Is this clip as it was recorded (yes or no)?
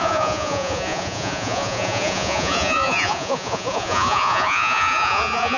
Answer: no